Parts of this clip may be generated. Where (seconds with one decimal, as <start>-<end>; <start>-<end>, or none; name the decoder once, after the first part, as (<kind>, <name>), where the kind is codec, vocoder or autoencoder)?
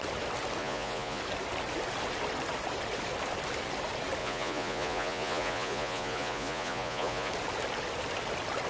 0.6-1.2 (vocoder, Vocos); 4.2-7.3